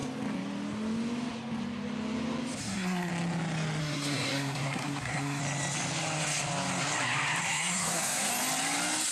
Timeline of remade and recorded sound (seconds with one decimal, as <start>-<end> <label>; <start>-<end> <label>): 0.0-2.6 recorded; 2.6-3.1 remade; 3.1-3.8 recorded; 3.8-5.4 remade; 5.4-7.4 recorded; 7.4-8.3 remade; 8.3-9.1 recorded